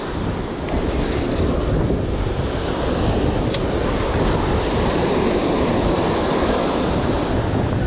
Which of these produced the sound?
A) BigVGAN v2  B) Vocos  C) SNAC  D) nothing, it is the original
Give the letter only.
D